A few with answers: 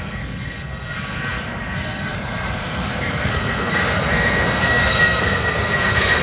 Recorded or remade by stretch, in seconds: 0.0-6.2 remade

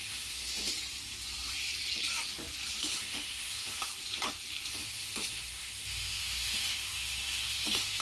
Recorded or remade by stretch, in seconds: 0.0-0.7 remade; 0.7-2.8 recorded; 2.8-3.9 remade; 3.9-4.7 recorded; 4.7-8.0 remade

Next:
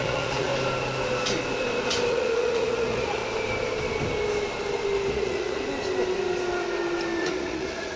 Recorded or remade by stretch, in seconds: 0.0-0.5 remade; 0.5-2.1 recorded; 2.1-3.2 remade; 3.2-5.1 recorded; 5.1-5.6 remade; 5.6-7.2 recorded; 7.2-8.0 remade

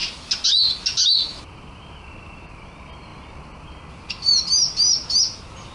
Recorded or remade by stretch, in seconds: 0.0-5.7 recorded